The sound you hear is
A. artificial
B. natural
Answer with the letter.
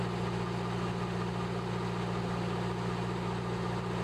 B